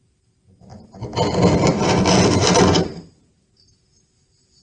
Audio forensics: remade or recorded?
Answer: recorded